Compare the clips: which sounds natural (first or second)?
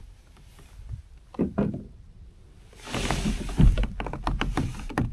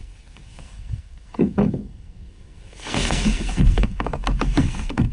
first